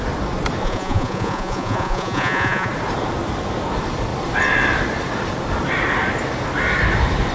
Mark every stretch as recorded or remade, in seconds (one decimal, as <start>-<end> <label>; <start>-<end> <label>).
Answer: 0.0-0.6 recorded; 0.6-2.7 remade; 2.7-7.3 recorded